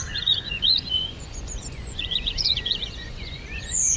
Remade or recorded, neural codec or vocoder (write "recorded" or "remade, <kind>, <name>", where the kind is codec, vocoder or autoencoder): remade, vocoder, Vocos